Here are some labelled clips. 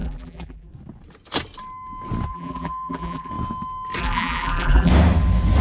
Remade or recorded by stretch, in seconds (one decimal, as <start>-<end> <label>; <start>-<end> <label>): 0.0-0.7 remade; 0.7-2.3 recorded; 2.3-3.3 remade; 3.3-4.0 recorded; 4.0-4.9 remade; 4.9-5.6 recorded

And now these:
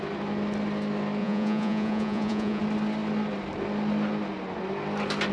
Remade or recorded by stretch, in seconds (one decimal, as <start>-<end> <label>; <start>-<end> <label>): 0.0-1.2 recorded; 1.2-2.6 remade; 2.6-5.3 recorded

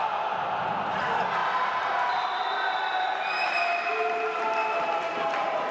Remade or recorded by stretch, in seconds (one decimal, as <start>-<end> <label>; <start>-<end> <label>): 0.0-5.7 recorded

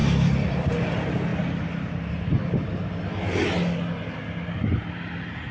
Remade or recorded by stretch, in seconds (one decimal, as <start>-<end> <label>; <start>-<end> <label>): 0.0-5.5 recorded

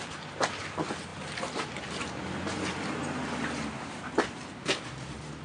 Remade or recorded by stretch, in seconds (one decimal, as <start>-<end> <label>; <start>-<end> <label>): 0.0-5.4 remade

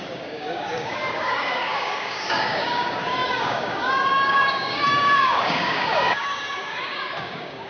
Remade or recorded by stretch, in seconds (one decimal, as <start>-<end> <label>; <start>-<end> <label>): 0.0-7.7 remade